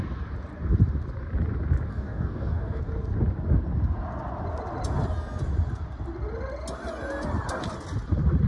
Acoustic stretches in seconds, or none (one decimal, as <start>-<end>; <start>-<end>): 0.0-1.9; 2.8-8.5